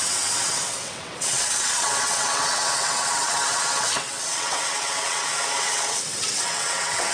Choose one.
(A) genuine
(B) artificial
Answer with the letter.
B